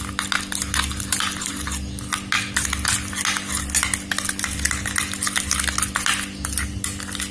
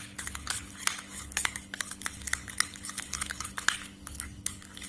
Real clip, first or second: first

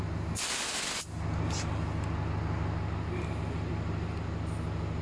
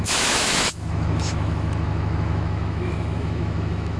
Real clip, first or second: first